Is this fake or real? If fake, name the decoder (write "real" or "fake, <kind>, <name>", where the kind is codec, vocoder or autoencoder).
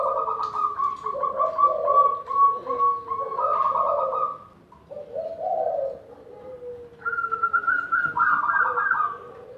real